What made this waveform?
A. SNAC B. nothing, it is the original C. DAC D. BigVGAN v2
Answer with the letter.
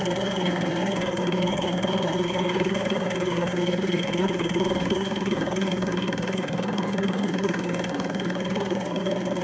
A